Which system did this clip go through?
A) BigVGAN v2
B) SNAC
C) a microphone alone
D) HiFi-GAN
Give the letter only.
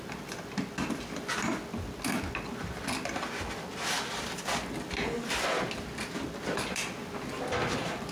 C